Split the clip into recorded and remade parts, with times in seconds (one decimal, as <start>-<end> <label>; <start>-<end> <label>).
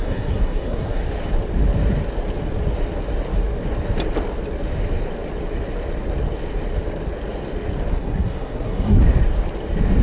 0.0-1.0 remade; 1.0-7.9 recorded; 7.9-9.0 remade; 9.0-10.0 recorded